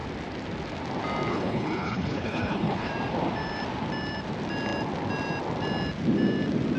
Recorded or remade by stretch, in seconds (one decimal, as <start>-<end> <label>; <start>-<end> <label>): 0.0-1.3 recorded; 1.3-2.9 remade; 2.9-6.8 recorded